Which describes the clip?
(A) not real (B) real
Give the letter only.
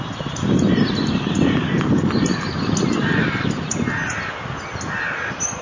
B